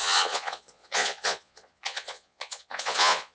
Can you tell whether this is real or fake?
fake